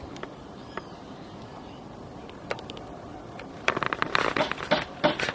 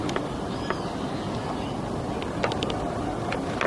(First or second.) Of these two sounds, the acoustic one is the second